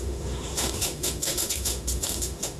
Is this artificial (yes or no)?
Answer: yes